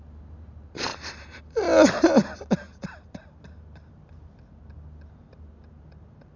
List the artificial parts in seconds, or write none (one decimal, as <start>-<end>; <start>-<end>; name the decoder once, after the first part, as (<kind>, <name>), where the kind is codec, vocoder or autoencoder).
0.9-1.4 (vocoder, BigVGAN v2)